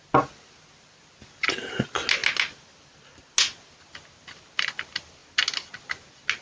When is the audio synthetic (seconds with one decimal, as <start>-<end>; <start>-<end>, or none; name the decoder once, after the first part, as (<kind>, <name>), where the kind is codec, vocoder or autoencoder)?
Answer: none